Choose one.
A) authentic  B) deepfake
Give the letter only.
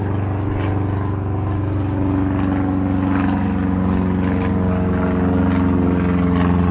A